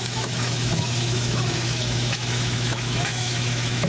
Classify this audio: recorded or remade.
remade